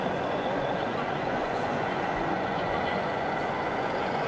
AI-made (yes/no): yes